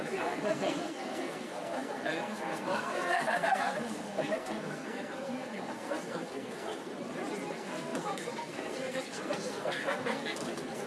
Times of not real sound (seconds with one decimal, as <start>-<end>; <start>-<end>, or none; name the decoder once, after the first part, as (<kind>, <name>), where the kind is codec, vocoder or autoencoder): 0.0-6.9 (codec, SNAC); 7.5-10.9